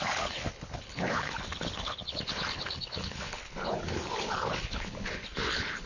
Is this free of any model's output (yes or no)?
no